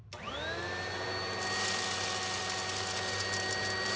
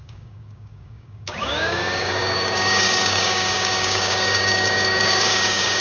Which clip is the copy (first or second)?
second